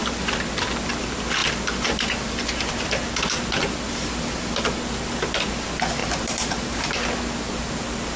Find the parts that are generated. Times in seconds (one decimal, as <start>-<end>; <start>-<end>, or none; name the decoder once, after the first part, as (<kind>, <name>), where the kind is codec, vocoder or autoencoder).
6.0-7.0 (vocoder, BigVGAN v2)